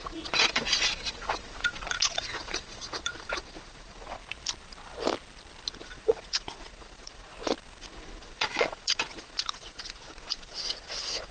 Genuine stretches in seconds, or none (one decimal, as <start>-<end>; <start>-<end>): 4.2-5.7; 7.3-7.8